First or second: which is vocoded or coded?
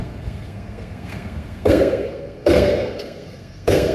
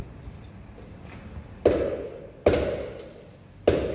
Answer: first